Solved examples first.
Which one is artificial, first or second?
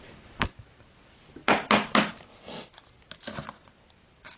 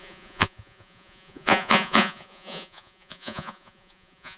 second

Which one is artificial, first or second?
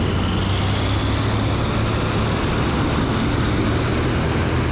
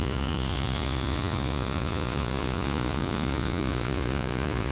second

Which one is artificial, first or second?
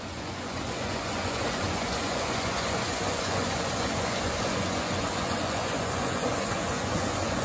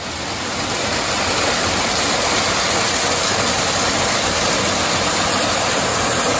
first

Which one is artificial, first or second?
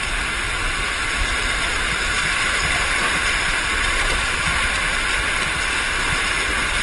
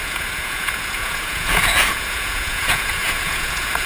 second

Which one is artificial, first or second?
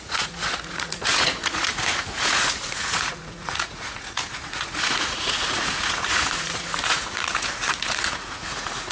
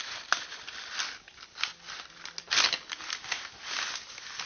first